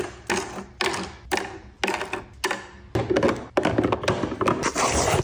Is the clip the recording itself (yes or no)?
yes